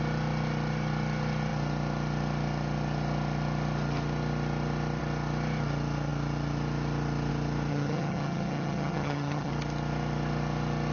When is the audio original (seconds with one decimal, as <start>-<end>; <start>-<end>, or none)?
0.0-7.7; 9.5-10.9